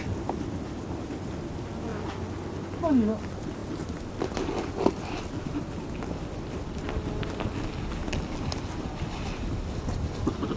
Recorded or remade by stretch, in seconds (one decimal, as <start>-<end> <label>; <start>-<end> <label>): 0.0-10.6 recorded